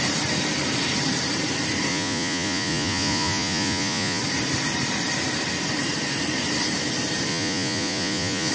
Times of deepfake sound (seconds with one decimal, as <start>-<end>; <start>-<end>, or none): 1.9-4.2; 7.3-8.5